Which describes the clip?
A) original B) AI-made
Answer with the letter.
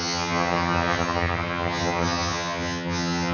B